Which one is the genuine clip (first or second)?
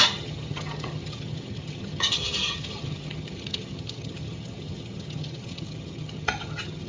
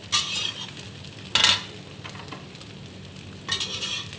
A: second